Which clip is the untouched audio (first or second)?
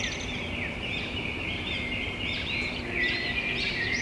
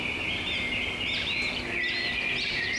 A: second